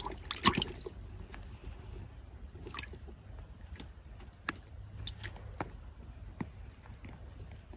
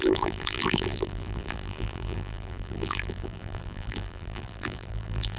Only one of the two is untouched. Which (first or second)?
first